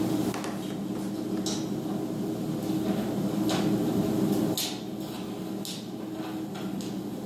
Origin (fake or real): real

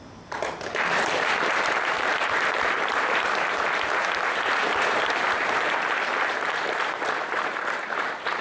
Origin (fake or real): fake